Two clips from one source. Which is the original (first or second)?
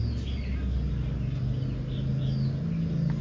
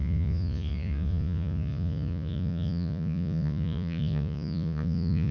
first